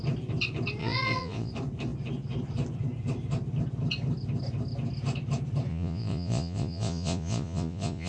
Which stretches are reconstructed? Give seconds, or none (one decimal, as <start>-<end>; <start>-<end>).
0.8-1.5; 5.7-8.1